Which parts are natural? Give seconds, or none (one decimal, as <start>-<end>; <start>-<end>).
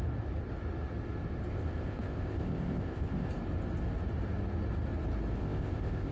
0.0-1.5; 3.3-5.4